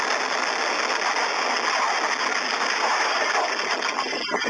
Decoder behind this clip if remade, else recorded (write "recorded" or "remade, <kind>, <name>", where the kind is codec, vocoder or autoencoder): recorded